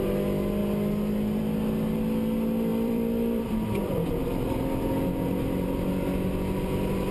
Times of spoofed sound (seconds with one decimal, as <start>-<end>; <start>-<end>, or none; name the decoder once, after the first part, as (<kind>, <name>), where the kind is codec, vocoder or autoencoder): 2.7-4.9 (vocoder, BigVGAN v2)